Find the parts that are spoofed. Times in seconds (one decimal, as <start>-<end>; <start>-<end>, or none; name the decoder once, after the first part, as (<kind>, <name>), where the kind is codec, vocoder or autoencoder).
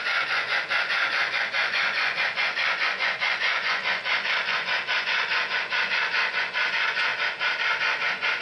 0.0-7.1 (vocoder, Vocos); 7.8-8.4